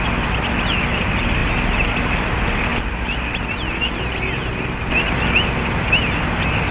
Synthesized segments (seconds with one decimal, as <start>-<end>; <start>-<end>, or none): none